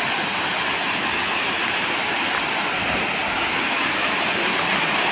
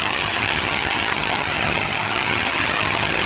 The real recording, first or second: first